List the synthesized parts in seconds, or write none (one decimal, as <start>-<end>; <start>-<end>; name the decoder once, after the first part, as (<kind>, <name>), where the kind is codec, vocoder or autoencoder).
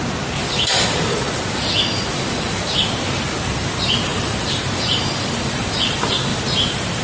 0.4-1.4 (vocoder, BigVGAN v2); 4.1-5.8; 6.3-7.0